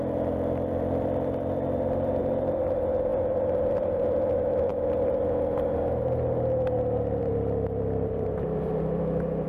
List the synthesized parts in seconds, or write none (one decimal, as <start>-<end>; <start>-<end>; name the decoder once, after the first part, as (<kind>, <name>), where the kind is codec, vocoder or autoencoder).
0.0-4.7 (vocoder, BigVGAN v2); 7.2-9.5

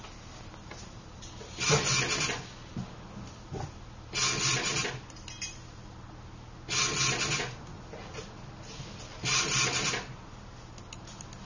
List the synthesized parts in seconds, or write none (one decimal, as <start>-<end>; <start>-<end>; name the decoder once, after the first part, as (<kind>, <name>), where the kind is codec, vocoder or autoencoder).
none